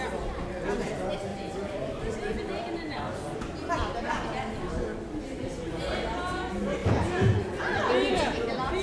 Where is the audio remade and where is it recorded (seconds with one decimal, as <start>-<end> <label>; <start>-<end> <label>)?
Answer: 0.0-1.3 recorded; 1.3-2.6 remade; 2.6-4.9 recorded; 4.9-5.7 remade; 5.7-6.8 recorded; 6.8-7.6 remade; 7.6-8.8 recorded